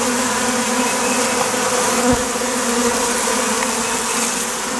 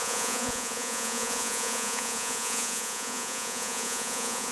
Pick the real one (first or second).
first